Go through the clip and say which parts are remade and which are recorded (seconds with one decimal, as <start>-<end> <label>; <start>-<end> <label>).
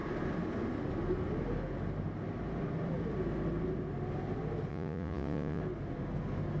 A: 0.0-4.7 recorded; 4.7-5.6 remade; 5.6-6.6 recorded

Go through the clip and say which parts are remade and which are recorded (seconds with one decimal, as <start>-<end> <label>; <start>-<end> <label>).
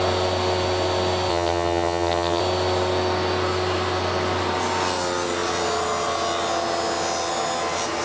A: 0.0-1.3 recorded; 1.3-2.4 remade; 2.4-8.0 recorded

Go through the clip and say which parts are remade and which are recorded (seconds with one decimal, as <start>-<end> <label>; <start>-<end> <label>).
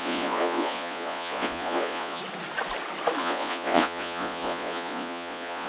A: 0.0-2.2 remade; 2.2-3.2 recorded; 3.2-5.7 remade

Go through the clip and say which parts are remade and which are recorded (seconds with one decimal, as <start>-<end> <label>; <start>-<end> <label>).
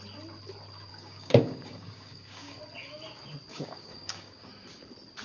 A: 0.0-0.9 recorded; 0.9-2.6 remade; 2.6-3.5 recorded; 3.5-4.5 remade; 4.5-5.2 recorded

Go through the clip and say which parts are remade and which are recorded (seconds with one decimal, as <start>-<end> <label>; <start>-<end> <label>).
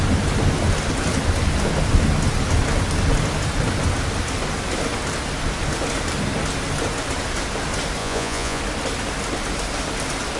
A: 0.0-8.0 recorded; 8.0-8.6 remade; 8.6-10.4 recorded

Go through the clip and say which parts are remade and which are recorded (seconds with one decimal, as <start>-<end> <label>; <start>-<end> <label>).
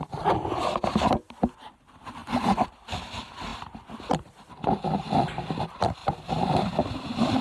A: 0.0-2.2 recorded; 2.2-3.1 remade; 3.1-3.5 recorded; 3.5-4.5 remade; 4.5-6.0 recorded; 6.0-7.4 remade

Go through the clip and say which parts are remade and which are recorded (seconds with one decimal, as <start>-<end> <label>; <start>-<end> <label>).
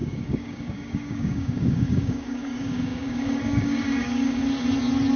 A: 0.0-4.4 remade; 4.4-5.2 recorded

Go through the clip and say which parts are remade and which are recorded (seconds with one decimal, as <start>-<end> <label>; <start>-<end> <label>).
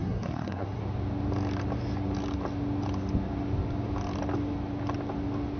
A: 0.0-0.8 remade; 0.8-5.6 recorded